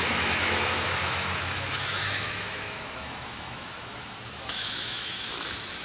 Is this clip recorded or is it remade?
remade